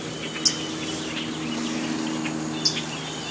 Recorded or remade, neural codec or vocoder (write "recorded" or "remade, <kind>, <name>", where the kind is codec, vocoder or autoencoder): recorded